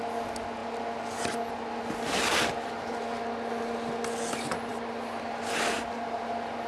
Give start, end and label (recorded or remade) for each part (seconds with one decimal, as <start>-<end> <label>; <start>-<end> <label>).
0.0-6.7 recorded